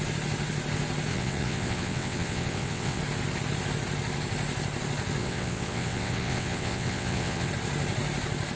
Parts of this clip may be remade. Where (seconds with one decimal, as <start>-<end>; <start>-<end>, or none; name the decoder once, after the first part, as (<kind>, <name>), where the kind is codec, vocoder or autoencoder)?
1.1-3.0 (vocoder, WaveNeXt); 5.2-7.5